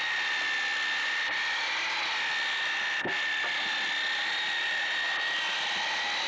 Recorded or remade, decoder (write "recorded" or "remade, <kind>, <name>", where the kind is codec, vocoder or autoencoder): recorded